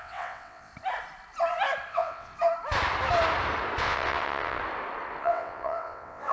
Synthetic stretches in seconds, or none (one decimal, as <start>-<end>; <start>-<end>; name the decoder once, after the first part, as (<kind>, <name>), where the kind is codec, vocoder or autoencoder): 0.0-0.7 (vocoder, WaveNeXt); 1.9-2.3; 3.8-4.6; 5.2-6.3